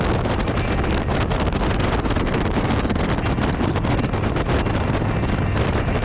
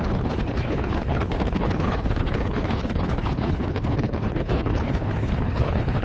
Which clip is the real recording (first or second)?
first